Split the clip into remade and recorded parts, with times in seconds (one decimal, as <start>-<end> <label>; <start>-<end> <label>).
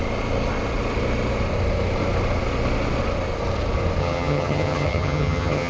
0.0-4.0 recorded; 4.0-5.7 remade